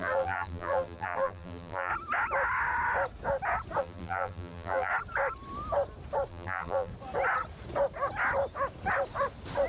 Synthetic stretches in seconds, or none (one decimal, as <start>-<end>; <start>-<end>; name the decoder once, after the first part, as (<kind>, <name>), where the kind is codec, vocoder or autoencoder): 0.0-1.9 (vocoder, BigVGAN v2); 3.8-4.9; 6.3-6.9